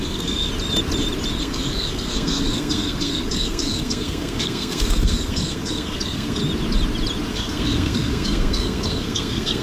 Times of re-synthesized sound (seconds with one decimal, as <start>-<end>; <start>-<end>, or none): 0.0-0.5; 1.4-6.4; 7.3-9.6